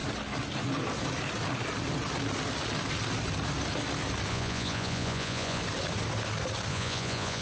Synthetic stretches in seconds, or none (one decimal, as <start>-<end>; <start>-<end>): 4.3-5.6; 6.7-7.4